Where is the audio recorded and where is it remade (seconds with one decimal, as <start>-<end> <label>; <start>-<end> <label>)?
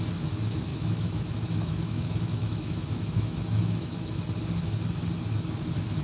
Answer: 0.0-0.7 recorded; 0.7-4.2 remade; 4.2-6.0 recorded